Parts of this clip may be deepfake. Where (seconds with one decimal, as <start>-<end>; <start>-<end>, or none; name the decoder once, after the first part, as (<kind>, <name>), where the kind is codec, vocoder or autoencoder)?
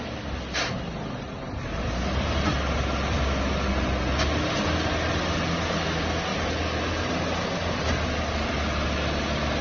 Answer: none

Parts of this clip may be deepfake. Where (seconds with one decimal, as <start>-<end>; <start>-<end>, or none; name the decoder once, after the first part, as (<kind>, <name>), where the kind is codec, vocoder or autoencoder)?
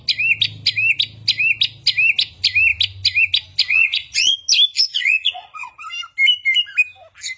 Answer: 3.7-4.4 (vocoder, Vocos); 4.9-5.8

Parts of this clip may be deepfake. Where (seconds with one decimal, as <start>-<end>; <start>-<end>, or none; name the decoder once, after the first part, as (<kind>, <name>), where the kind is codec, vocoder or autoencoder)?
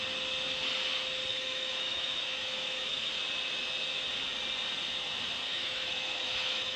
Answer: 1.3-3.1 (autoencoder, DAC-VAE); 5.5-6.8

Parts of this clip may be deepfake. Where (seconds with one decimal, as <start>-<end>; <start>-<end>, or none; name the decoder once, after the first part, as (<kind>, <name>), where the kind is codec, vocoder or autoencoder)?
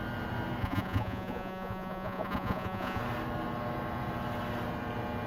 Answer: 0.6-3.0 (vocoder, Vocos)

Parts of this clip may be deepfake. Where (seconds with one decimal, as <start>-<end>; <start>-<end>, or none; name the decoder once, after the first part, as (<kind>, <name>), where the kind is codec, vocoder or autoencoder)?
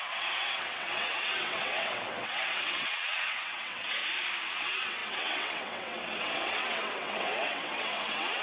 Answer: 0.0-4.0 (vocoder, WaveNeXt); 4.6-8.4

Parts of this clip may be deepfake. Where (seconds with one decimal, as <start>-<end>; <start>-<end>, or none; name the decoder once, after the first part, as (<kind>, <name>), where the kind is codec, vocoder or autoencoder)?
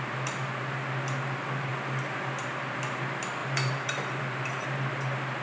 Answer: 3.4-4.2 (vocoder, BigVGAN v2)